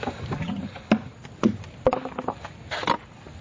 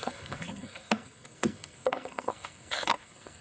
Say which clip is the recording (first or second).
first